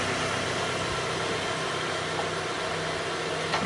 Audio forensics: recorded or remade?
recorded